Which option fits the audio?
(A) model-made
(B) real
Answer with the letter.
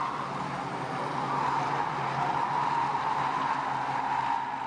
B